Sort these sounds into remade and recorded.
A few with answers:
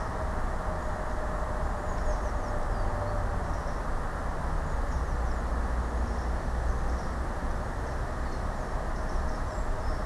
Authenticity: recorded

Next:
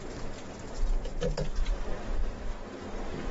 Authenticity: recorded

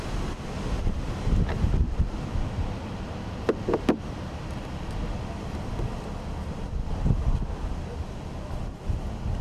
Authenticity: recorded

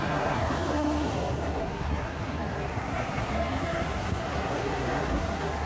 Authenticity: remade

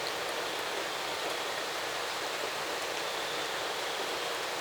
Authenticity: recorded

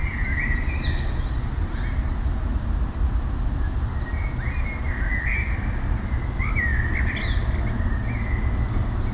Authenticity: recorded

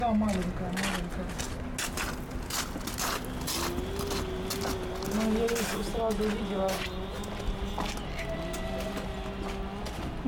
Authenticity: recorded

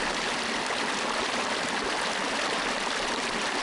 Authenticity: recorded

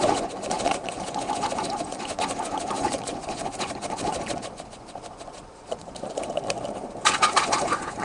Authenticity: remade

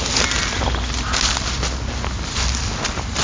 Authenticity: recorded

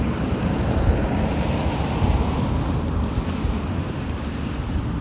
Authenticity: recorded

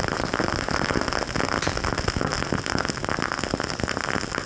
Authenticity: recorded